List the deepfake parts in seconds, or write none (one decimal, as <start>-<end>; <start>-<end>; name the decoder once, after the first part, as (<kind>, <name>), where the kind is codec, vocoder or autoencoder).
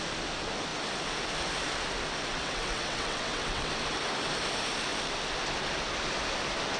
2.3-3.7 (vocoder, WaveNeXt)